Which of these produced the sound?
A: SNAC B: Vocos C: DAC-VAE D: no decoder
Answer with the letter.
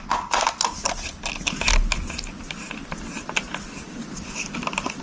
D